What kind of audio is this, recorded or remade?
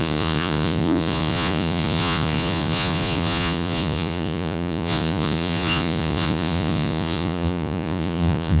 remade